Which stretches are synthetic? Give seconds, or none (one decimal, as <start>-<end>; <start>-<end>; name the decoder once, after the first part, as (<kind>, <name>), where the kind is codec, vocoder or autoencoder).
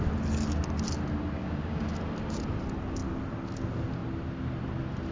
1.4-1.9 (codec, DAC)